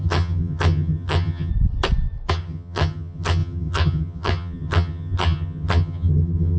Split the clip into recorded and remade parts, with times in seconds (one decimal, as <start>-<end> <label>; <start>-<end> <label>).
0.0-1.5 remade; 1.5-2.3 recorded; 2.3-6.6 remade